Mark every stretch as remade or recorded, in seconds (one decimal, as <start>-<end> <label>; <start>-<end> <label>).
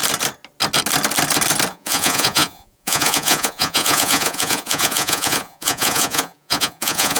0.0-1.7 recorded; 1.7-7.2 remade